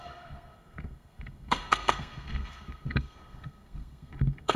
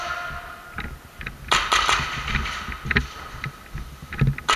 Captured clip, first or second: second